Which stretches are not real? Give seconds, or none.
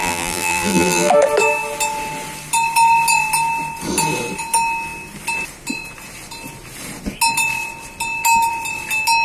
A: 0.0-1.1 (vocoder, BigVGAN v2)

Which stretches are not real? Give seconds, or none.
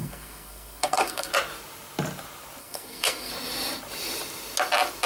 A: 0.0-1.3 (codec, SNAC); 2.6-3.3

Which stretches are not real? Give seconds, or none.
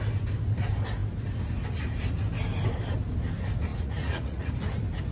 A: 3.7-4.5 (vocoder, Vocos)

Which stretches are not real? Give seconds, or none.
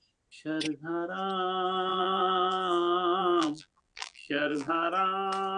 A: 1.9-4.7 (vocoder, BigVGAN v2)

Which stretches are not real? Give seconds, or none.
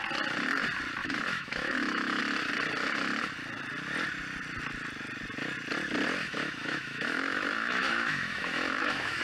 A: 1.0-2.2 (autoencoder, DAC-VAE); 6.2-9.2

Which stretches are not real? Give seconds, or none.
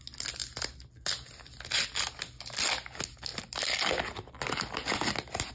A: none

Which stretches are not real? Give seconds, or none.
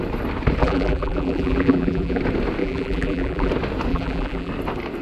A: 0.6-2.2 (vocoder, BigVGAN v2); 2.6-3.5; 3.9-4.5